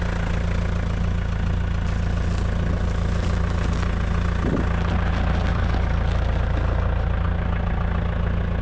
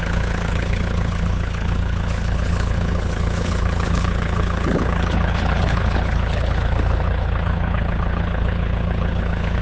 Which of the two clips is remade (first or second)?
second